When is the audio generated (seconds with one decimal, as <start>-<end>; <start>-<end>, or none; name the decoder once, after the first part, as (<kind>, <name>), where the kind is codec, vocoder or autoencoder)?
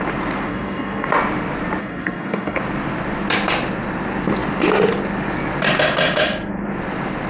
0.5-1.1 (codec, SNAC); 1.8-2.6